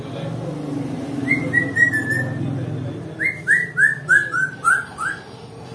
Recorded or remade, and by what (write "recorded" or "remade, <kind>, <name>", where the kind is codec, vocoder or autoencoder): recorded